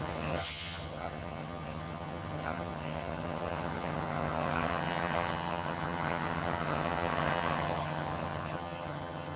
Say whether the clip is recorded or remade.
remade